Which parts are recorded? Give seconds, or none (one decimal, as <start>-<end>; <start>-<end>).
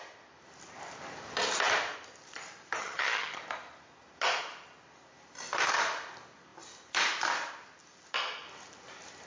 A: 0.0-2.8; 3.4-9.3